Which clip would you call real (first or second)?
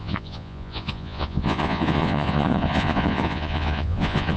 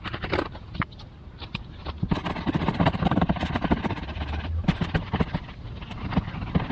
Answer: second